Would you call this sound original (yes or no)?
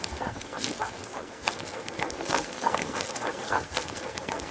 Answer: no